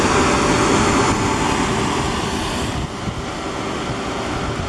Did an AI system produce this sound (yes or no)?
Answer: no